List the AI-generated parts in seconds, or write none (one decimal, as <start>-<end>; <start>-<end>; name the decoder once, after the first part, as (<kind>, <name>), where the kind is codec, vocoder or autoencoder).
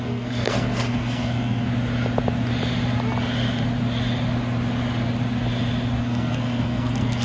0.0-1.7 (codec, SNAC); 6.0-7.2